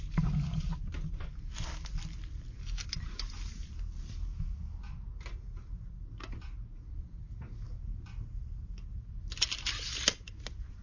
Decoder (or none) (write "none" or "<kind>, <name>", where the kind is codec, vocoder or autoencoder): none